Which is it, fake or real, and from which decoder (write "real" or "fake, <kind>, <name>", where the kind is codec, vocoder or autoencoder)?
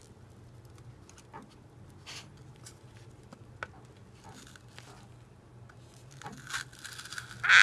real